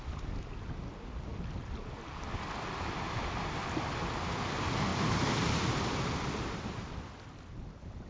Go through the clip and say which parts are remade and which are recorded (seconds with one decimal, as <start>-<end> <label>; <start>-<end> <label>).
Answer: 0.0-4.9 recorded; 4.9-5.9 remade; 5.9-8.1 recorded